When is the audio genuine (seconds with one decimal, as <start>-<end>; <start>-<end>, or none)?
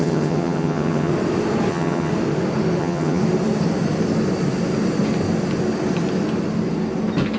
1.1-1.7; 2.1-2.8; 3.2-7.4